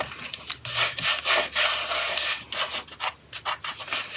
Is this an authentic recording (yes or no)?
yes